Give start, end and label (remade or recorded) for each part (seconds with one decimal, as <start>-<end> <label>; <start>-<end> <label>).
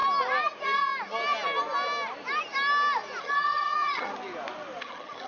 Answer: 0.0-3.2 recorded; 3.2-4.1 remade; 4.1-4.8 recorded; 4.8-5.3 remade